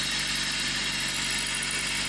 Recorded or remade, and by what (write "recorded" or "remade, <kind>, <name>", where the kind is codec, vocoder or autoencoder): recorded